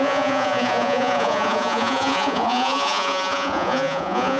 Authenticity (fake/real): fake